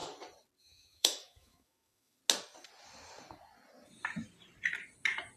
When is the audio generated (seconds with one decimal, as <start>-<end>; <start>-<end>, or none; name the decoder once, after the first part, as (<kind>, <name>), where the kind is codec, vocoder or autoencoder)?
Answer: 0.6-2.2 (autoencoder, DAC-VAE)